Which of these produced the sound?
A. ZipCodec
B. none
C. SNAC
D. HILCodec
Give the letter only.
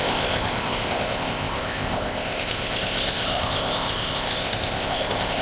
A